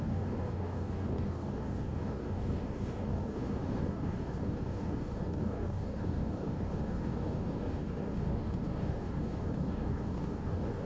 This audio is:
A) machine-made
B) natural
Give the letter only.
A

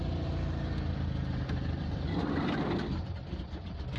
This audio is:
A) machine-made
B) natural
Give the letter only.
B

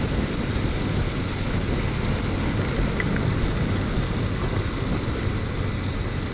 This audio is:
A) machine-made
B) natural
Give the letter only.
B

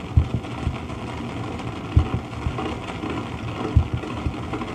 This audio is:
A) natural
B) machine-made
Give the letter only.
A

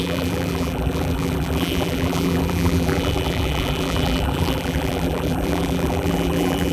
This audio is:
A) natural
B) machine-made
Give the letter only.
B